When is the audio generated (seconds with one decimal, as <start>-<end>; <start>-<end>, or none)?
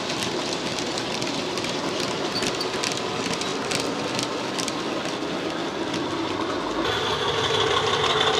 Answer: none